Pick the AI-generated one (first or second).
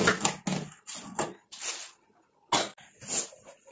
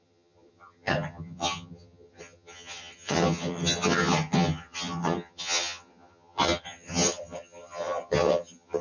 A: second